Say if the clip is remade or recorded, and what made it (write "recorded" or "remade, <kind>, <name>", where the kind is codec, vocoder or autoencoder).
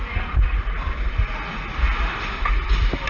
recorded